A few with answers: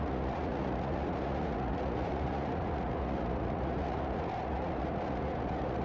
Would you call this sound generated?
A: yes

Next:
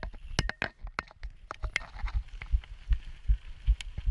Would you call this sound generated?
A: no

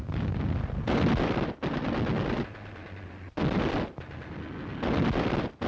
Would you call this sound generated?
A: no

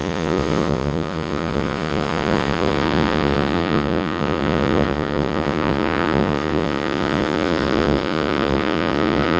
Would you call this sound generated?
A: yes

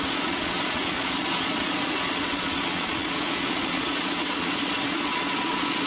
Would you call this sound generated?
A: yes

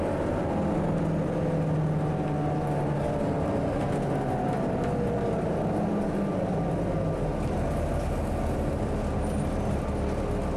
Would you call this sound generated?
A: no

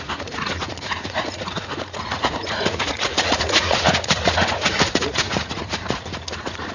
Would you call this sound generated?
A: yes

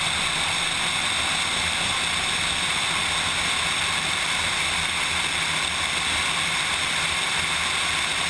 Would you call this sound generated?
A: no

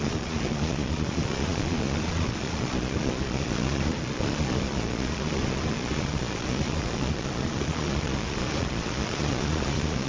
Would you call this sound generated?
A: yes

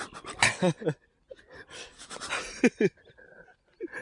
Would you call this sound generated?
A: no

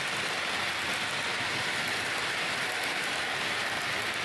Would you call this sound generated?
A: no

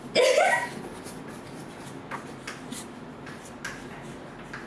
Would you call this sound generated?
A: no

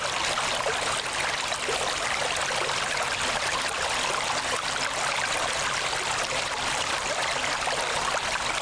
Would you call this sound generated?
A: no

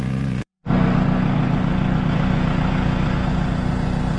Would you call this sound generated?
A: yes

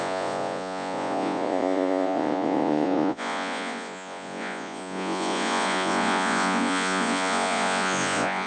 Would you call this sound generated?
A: yes